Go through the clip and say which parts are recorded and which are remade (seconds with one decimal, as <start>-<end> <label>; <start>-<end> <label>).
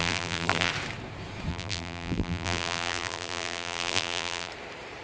0.0-0.7 remade; 0.7-1.5 recorded; 1.5-4.5 remade; 4.5-5.0 recorded